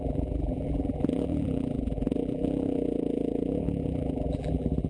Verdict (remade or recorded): remade